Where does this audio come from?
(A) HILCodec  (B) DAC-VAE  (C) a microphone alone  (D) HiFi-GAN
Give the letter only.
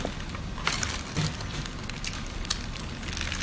C